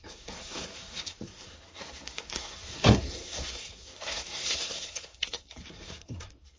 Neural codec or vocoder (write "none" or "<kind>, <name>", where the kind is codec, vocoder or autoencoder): codec, SNAC